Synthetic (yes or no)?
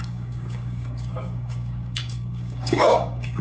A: yes